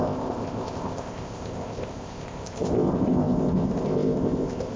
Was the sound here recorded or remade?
remade